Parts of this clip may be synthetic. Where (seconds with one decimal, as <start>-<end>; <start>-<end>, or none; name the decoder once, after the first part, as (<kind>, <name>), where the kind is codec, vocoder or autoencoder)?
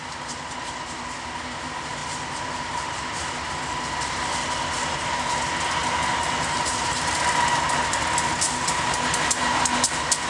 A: none